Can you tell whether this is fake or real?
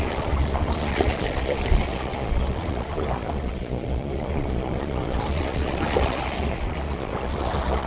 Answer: fake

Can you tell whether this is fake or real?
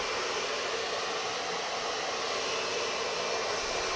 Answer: real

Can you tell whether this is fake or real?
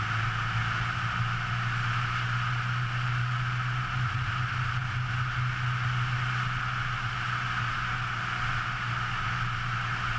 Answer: real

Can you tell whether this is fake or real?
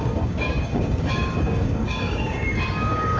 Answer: fake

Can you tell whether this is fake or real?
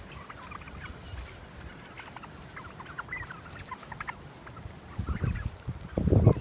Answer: real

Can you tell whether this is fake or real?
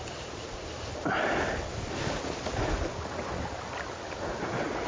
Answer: real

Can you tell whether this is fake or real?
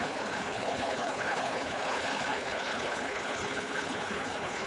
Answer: fake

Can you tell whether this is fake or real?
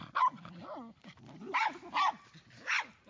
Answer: real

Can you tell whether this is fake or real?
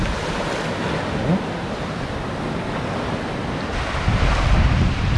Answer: real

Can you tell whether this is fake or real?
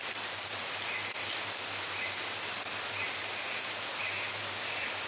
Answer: real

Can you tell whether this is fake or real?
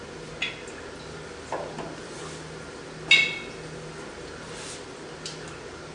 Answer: real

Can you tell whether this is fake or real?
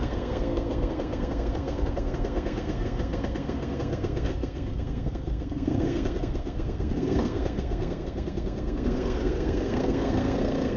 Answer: fake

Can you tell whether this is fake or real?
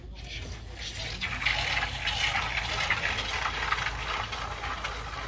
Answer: real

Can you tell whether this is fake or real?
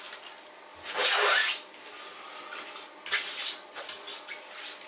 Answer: real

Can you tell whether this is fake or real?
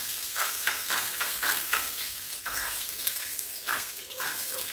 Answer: fake